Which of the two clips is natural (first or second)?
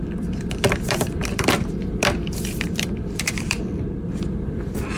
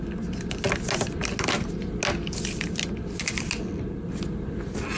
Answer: second